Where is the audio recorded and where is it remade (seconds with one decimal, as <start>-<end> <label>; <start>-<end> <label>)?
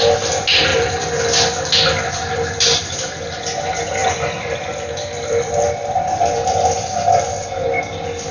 0.0-0.7 recorded; 0.7-1.2 remade; 1.2-4.0 recorded; 4.0-7.3 remade; 7.3-8.3 recorded